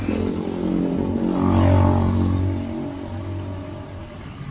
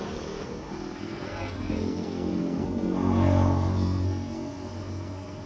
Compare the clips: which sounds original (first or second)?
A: first